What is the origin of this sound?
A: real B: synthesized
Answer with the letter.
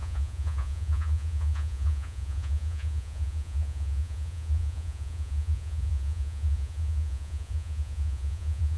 B